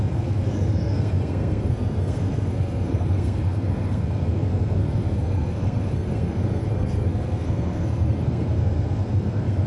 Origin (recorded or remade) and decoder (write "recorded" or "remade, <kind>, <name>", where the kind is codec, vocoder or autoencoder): remade, codec, SNAC